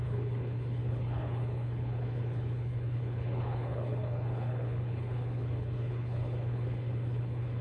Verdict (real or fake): fake